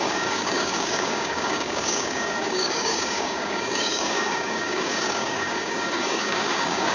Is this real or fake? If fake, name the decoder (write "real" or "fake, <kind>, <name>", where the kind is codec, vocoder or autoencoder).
fake, codec, DAC